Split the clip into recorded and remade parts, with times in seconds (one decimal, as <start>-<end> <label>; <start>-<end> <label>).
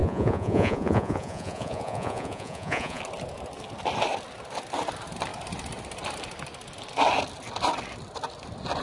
0.0-3.0 remade; 3.0-8.8 recorded